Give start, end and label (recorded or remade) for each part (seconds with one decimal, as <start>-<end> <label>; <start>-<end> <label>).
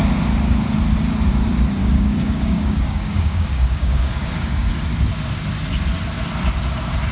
0.0-1.8 recorded; 1.8-4.7 remade; 4.7-7.1 recorded